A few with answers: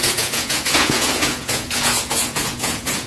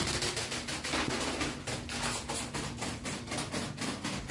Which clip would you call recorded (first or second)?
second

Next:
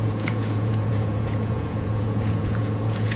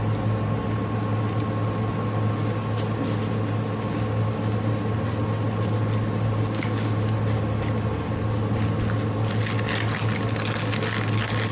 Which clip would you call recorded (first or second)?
second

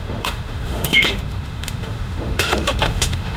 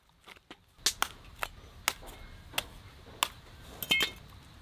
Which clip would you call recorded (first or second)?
second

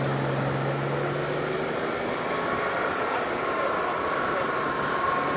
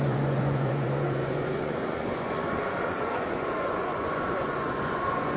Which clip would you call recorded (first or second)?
first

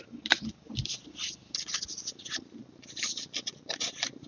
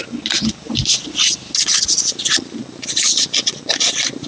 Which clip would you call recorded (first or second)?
second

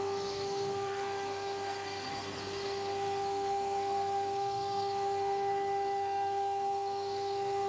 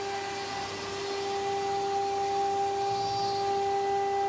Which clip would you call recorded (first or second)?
second